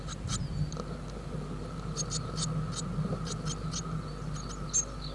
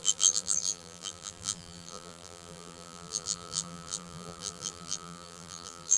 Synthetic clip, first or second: second